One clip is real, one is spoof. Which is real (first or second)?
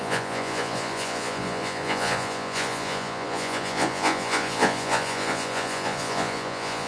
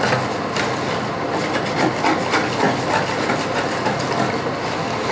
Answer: second